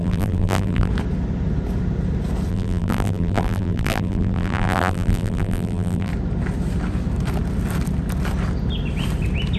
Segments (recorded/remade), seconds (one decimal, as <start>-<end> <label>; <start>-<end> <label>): 0.0-0.9 remade; 0.9-2.5 recorded; 2.5-6.1 remade; 6.1-9.6 recorded